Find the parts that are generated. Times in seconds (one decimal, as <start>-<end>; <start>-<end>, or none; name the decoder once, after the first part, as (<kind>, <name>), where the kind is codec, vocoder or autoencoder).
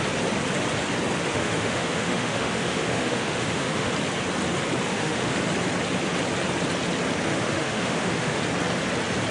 1.3-3.9 (autoencoder, DAC-VAE); 4.9-5.4; 7.3-8.4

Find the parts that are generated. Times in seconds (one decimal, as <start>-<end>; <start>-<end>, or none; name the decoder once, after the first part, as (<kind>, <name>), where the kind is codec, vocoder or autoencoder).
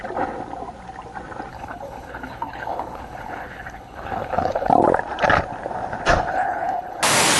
1.5-4.7 (codec, HILCodec); 6.3-7.0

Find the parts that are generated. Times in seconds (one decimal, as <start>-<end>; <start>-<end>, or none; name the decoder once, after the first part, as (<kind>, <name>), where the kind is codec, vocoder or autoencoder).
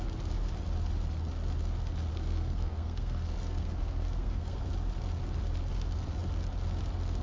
2.1-4.7 (codec, SNAC)